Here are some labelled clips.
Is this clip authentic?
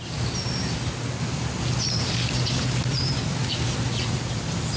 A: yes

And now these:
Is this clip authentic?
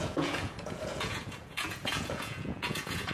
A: no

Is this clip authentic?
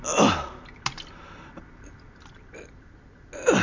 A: yes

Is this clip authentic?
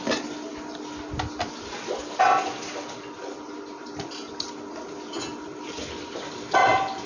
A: yes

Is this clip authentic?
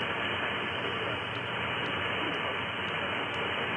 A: yes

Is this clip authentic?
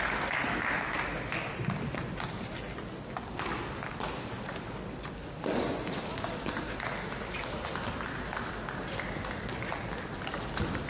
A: yes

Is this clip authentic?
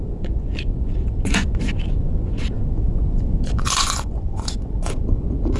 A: no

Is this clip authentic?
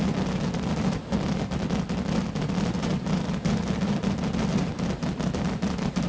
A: yes